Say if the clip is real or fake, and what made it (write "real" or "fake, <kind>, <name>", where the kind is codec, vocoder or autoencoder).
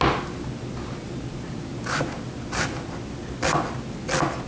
real